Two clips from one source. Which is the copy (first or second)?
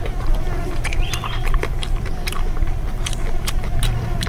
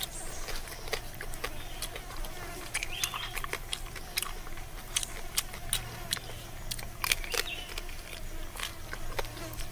first